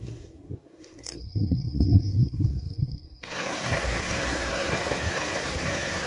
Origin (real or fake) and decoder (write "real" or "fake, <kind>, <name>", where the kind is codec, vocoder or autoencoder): fake, codec, SNAC